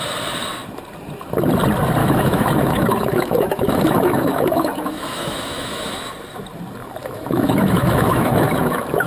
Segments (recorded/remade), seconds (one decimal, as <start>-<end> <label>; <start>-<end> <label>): 0.0-2.0 recorded; 2.0-6.1 remade; 6.1-7.0 recorded; 7.0-9.1 remade

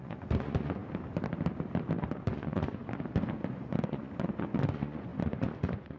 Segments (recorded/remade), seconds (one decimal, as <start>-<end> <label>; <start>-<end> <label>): 0.0-0.8 remade; 0.8-2.0 recorded; 2.0-2.8 remade; 2.8-3.5 recorded; 3.5-6.0 remade

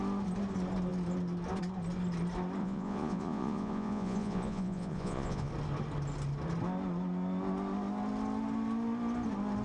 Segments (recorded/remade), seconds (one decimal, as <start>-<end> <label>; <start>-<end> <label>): 0.0-2.6 recorded; 2.6-5.5 remade; 5.5-9.6 recorded

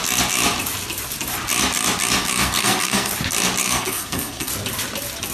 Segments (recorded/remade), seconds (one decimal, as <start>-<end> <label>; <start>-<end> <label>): 0.0-2.2 recorded; 2.2-3.1 remade; 3.1-3.6 recorded; 3.6-4.5 remade; 4.5-5.3 recorded